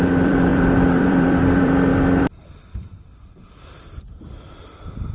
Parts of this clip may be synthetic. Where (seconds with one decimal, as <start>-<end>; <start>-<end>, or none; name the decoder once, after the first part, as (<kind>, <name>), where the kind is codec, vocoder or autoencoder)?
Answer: 0.0-5.1 (vocoder, BigVGAN v2)